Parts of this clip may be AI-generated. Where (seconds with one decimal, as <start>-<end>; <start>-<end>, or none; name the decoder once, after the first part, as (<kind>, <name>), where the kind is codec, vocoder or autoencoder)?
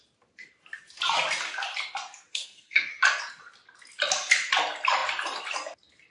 2.3-2.9 (codec, SNAC)